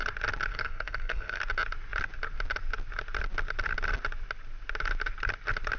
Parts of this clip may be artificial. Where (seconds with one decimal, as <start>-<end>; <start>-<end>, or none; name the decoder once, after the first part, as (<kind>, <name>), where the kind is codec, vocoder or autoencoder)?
0.5-1.4 (codec, SNAC)